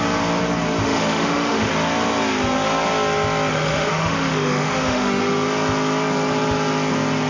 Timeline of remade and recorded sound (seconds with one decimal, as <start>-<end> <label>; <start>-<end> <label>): 0.0-0.8 recorded; 0.8-1.7 remade; 1.7-3.5 recorded; 3.5-5.2 remade; 5.2-7.3 recorded